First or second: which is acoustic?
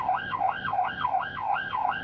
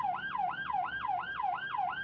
second